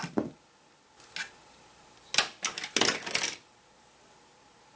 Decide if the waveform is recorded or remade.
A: recorded